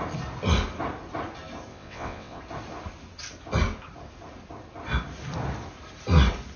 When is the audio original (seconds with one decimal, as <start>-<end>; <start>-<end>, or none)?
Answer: 0.0-1.7; 2.4-6.6